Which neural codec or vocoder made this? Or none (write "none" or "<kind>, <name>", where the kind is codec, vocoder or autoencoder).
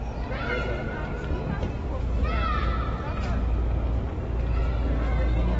none